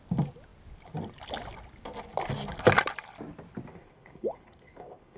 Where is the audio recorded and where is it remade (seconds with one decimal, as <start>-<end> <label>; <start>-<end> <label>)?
0.0-3.7 recorded; 3.7-5.2 remade